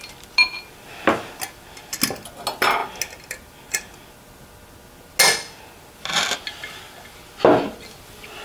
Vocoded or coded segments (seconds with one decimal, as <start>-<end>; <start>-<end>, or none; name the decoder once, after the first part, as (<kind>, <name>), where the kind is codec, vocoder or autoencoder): none